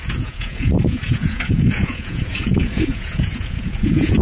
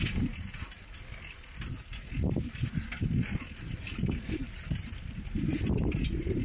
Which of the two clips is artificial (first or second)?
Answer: first